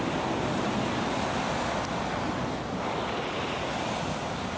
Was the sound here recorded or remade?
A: recorded